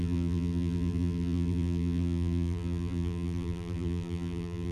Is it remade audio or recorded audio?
remade